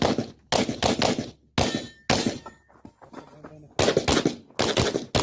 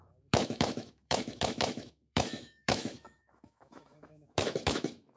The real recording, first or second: first